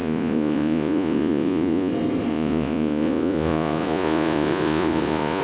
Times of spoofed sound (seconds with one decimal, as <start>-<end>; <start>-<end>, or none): 0.0-1.9; 2.3-5.4